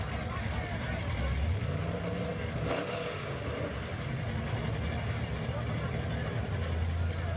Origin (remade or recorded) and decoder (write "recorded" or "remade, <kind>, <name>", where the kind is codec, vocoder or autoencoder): recorded